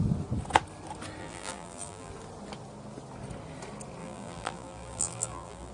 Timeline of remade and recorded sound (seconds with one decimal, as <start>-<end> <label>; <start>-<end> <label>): 0.0-1.2 recorded; 1.2-2.1 remade; 2.1-4.0 recorded; 4.0-5.7 remade